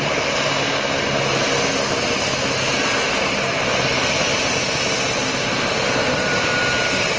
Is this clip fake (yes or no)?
no